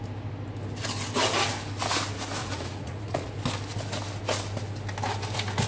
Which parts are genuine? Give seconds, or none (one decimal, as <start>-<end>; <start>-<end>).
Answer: 0.0-2.4; 3.3-5.7